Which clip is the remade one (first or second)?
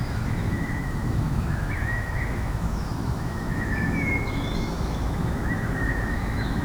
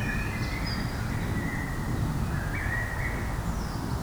first